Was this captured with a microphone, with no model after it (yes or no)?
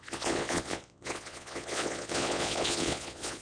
no